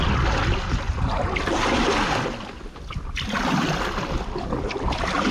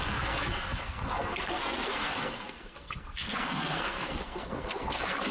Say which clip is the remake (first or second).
second